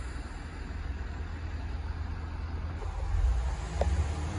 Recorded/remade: recorded